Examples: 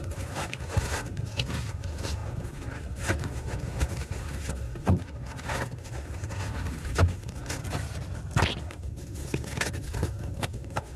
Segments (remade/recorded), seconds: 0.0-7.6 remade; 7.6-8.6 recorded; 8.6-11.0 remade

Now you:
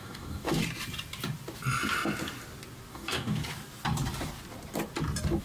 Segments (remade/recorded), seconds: 0.0-0.6 remade; 0.6-2.9 recorded; 2.9-3.4 remade; 3.4-5.4 recorded

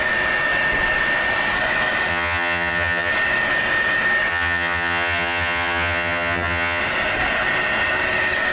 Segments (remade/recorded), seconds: 0.0-2.1 recorded; 2.1-3.1 remade; 3.1-4.3 recorded; 4.3-6.8 remade; 6.8-8.5 recorded

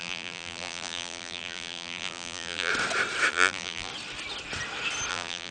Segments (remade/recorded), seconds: 0.0-2.7 remade; 2.7-3.3 recorded; 3.3-3.9 remade; 3.9-5.1 recorded; 5.1-5.5 remade

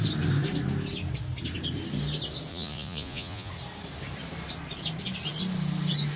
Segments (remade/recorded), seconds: 0.0-2.5 recorded; 2.5-3.5 remade; 3.5-6.2 recorded